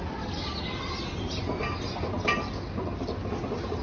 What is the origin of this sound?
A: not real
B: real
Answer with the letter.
B